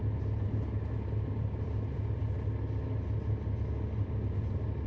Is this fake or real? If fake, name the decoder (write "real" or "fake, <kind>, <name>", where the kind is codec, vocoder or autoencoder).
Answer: real